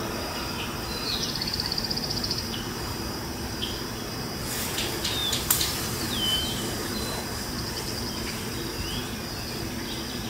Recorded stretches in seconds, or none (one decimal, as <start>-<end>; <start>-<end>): 0.0-0.9; 2.4-5.2; 6.6-10.3